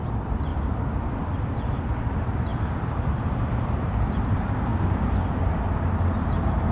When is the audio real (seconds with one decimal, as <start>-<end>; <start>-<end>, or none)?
0.5-1.4; 4.7-6.2